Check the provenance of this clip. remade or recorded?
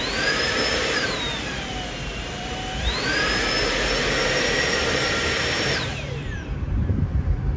remade